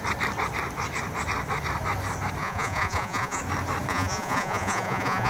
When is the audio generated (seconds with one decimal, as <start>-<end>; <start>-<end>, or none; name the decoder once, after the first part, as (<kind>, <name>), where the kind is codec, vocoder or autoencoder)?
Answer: 2.4-3.4 (vocoder, Vocos); 3.9-5.3